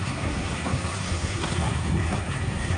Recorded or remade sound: remade